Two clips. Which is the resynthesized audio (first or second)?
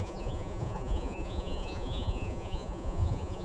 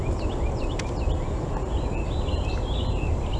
first